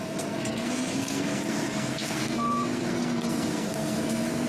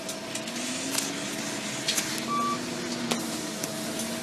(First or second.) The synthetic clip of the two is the first